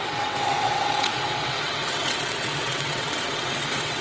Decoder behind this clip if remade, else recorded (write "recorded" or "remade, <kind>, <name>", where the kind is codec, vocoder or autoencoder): remade, vocoder, WaveNeXt